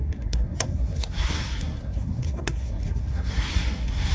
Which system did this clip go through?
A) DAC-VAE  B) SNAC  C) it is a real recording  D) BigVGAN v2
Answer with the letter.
B